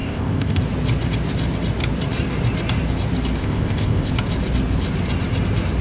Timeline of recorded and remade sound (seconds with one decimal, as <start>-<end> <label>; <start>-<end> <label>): 0.0-0.6 remade; 0.6-3.4 recorded; 3.4-4.1 remade; 4.1-5.8 recorded